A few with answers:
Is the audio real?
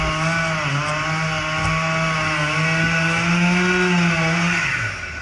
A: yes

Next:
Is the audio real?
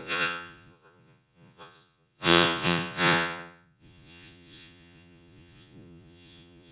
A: no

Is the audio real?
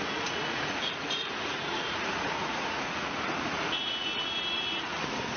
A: no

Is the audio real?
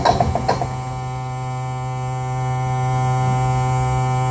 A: yes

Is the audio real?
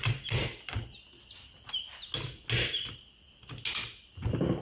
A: yes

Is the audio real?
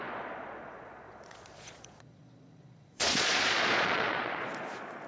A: no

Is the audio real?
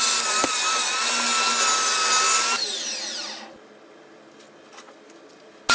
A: yes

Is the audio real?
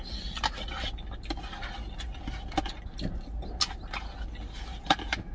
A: yes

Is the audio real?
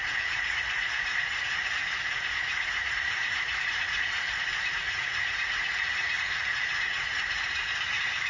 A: no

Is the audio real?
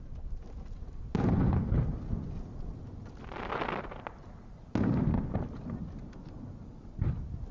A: yes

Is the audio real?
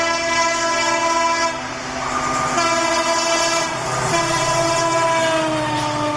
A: yes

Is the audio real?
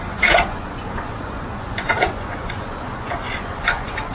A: no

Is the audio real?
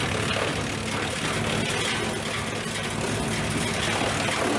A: yes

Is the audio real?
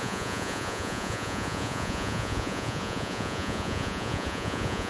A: no